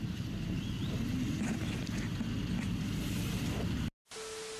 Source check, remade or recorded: recorded